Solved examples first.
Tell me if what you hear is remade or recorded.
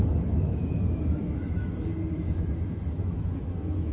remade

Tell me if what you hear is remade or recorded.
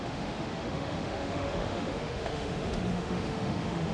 remade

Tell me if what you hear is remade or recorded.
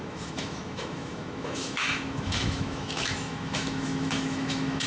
remade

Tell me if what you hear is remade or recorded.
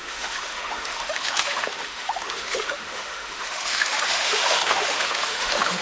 remade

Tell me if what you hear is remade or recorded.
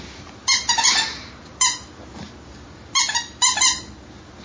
recorded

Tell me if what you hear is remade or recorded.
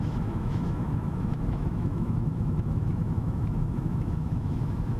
remade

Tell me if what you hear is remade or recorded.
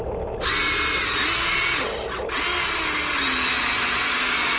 recorded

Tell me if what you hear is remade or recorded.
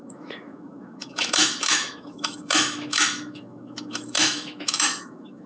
remade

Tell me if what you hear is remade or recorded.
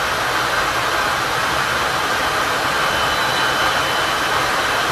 recorded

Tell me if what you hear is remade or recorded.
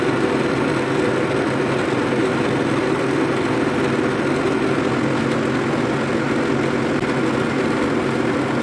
recorded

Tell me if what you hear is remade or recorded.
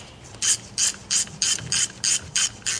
recorded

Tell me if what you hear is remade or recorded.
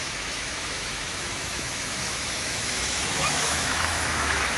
remade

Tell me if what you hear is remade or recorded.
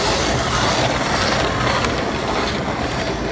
recorded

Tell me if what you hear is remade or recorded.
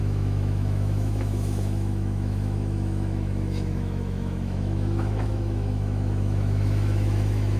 remade